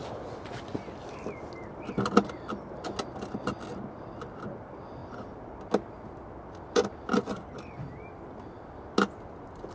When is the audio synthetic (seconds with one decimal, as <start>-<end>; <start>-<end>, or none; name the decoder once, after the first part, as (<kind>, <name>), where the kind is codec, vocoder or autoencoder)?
none